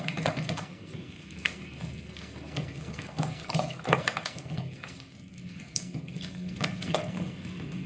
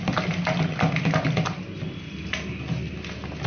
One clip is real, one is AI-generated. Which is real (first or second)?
second